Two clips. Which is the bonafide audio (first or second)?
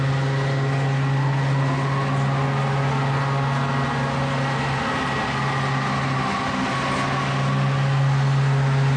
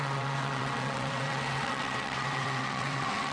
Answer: first